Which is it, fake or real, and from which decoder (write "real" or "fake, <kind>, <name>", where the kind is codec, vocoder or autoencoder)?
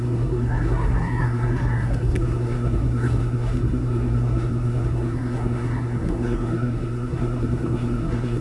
fake, codec, SNAC